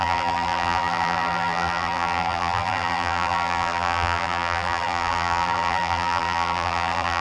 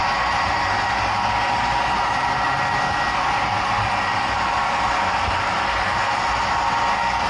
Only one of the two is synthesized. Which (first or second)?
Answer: first